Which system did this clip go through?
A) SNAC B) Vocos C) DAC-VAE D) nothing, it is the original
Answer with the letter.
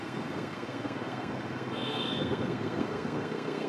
A